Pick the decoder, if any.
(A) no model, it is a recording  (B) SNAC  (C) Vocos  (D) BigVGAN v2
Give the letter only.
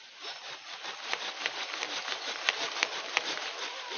A